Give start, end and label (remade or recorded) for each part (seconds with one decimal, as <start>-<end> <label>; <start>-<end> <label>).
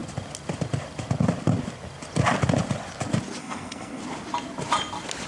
0.0-3.4 recorded; 3.4-4.0 remade; 4.0-5.3 recorded